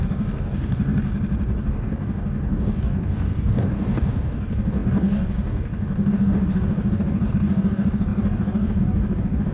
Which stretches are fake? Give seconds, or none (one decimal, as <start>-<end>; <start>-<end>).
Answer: 0.0-1.1; 1.6-9.5